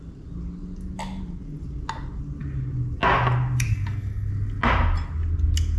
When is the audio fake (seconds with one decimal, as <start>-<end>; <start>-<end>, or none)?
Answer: 3.7-4.3